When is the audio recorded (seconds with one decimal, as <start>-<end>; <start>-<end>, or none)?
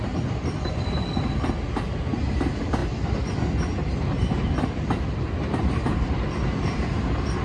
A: 0.0-7.4